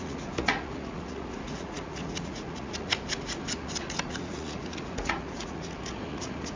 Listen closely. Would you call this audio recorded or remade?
remade